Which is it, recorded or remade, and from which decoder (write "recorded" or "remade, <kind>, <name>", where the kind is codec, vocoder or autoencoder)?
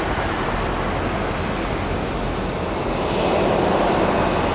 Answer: recorded